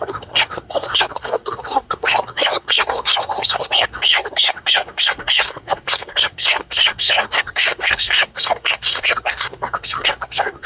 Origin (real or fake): fake